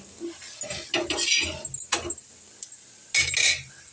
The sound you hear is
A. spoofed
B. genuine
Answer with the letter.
B